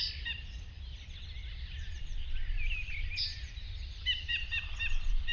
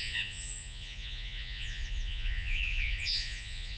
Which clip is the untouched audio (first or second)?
first